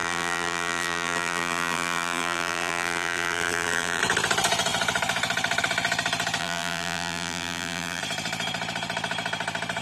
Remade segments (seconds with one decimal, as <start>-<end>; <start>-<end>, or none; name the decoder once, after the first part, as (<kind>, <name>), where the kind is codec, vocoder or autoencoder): 0.0-4.0 (vocoder, BigVGAN v2); 6.4-8.0